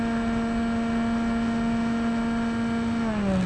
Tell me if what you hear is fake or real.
real